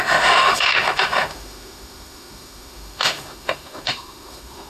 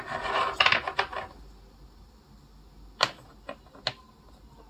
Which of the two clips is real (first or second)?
second